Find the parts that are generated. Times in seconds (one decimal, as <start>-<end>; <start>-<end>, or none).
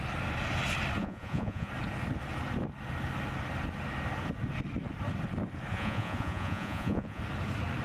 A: 1.0-1.7; 5.7-7.2